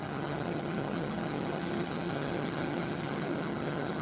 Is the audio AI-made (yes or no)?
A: yes